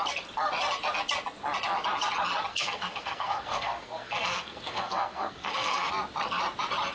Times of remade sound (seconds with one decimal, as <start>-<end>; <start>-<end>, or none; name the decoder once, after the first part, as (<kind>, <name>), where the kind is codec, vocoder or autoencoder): 2.5-5.9 (codec, SNAC)